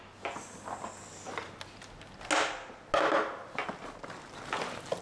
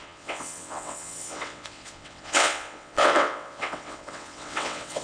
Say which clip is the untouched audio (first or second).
first